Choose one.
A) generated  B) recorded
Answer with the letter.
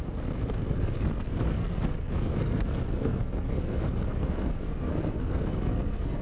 A